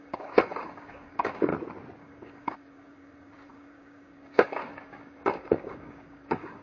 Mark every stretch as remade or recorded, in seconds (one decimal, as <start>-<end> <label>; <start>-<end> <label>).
0.0-1.5 remade; 1.5-2.0 recorded; 2.0-6.6 remade